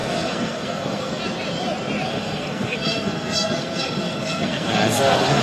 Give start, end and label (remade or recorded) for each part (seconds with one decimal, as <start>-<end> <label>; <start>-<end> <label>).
0.0-1.2 remade; 1.2-2.1 recorded; 2.1-5.4 remade